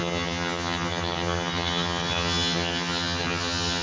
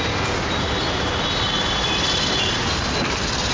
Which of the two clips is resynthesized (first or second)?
first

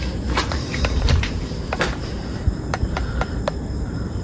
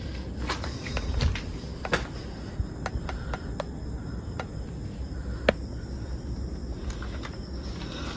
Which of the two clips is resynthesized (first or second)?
first